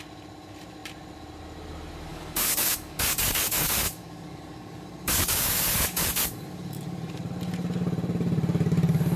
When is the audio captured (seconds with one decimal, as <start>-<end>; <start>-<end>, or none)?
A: 0.0-2.1; 7.2-9.2